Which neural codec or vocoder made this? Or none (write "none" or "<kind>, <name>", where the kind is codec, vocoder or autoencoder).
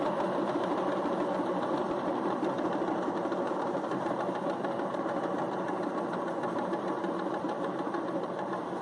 vocoder, BigVGAN v2